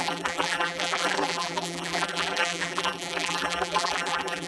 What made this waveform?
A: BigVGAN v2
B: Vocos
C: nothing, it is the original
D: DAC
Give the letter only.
A